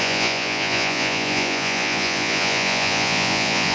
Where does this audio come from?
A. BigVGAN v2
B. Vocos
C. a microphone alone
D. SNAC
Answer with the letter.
B